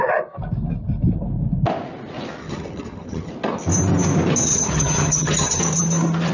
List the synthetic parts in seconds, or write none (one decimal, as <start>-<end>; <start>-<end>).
2.4-3.3; 4.5-5.6